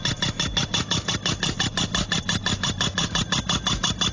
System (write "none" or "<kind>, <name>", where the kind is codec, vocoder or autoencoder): none